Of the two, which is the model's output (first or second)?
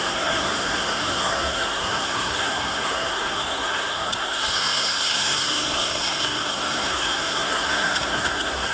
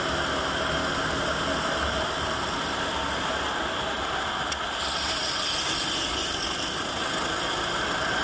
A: first